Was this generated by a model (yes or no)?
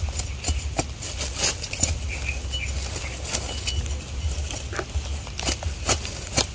no